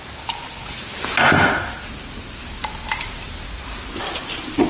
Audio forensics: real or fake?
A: real